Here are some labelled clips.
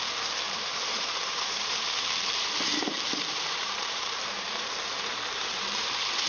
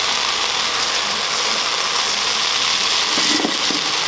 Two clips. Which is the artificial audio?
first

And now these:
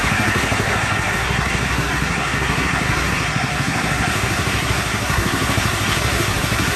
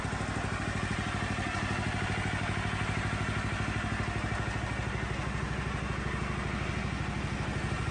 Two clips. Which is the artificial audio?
first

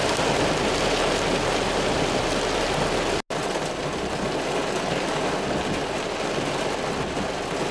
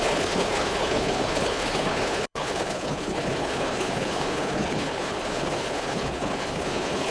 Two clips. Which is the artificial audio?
second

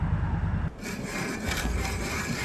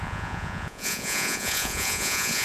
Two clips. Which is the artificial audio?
second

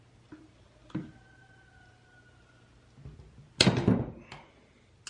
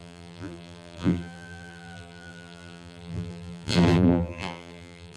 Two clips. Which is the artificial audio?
second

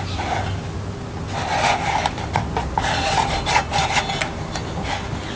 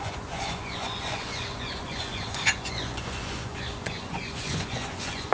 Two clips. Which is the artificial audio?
second